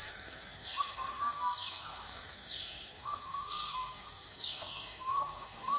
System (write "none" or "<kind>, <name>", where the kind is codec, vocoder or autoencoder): codec, SNAC